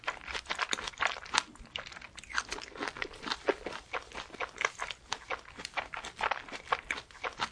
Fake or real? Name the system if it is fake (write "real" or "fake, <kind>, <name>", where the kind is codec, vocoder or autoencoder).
fake, vocoder, BigVGAN v2